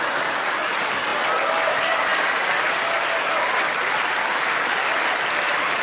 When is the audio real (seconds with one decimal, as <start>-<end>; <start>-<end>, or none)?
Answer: 0.0-2.1